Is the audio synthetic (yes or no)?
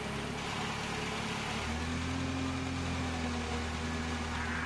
no